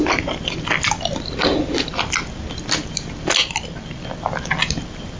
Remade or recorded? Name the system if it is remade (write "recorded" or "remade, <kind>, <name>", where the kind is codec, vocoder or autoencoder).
recorded